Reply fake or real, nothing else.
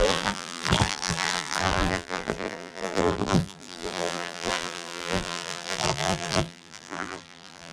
fake